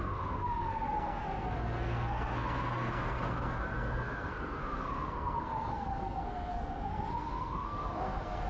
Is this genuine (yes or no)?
no